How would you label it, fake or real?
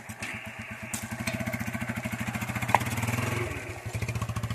real